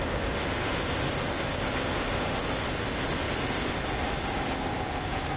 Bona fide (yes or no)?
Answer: yes